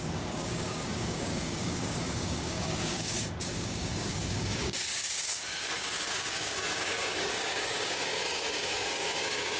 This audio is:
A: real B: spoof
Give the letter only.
B